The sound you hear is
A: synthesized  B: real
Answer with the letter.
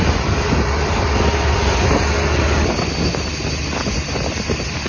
B